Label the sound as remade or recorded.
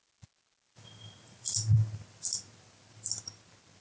recorded